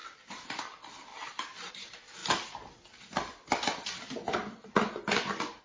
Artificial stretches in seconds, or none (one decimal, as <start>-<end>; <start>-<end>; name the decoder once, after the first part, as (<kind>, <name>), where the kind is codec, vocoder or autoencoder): 0.0-0.6 (vocoder, BigVGAN v2); 1.1-1.7